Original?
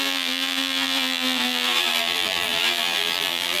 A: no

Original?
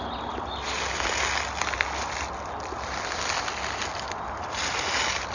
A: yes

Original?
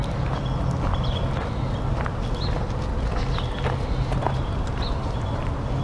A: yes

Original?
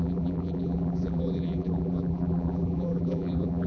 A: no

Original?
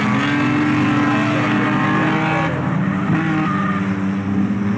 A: yes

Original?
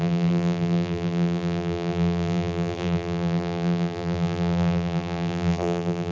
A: no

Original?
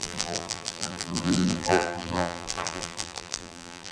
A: no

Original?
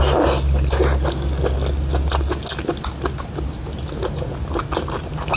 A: yes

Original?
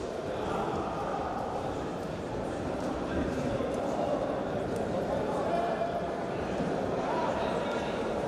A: no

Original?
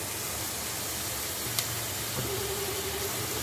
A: yes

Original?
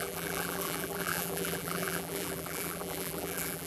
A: no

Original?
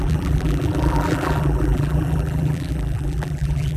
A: no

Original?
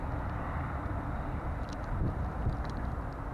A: no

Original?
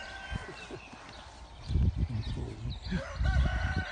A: yes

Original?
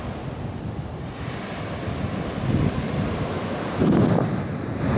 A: yes